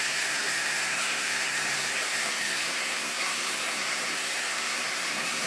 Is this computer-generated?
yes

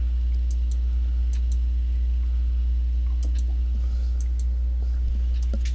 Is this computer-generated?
no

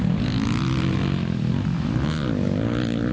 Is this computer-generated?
no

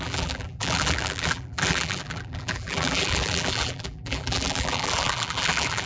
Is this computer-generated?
yes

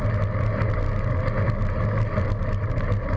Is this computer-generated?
no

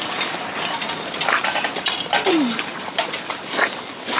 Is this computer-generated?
yes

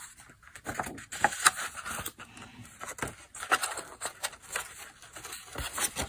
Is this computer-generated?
no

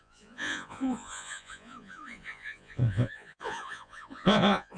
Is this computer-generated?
yes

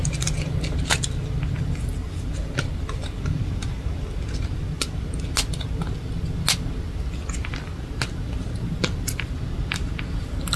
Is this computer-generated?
no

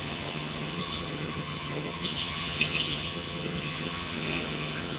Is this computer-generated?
yes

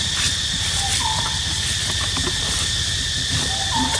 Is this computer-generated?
no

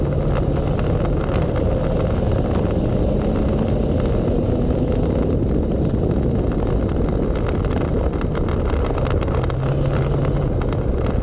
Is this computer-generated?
no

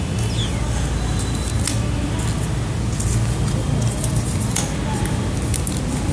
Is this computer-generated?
no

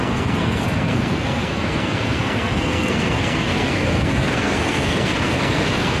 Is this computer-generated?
yes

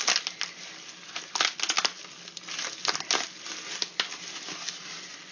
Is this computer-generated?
no